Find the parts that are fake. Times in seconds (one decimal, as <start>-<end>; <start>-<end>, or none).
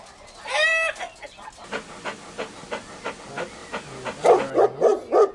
none